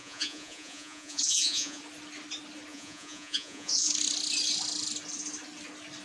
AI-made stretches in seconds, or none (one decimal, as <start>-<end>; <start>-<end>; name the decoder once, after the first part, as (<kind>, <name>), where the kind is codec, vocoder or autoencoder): 0.0-1.8 (vocoder, Vocos); 2.7-3.9